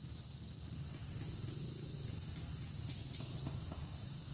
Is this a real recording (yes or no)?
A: yes